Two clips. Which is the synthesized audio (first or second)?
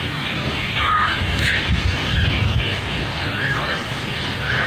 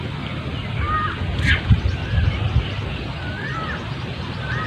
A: first